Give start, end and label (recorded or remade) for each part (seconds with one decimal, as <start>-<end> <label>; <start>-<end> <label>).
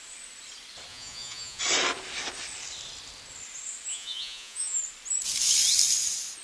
0.0-0.9 recorded; 0.9-1.6 remade; 1.6-3.9 recorded; 3.9-4.8 remade; 4.8-6.4 recorded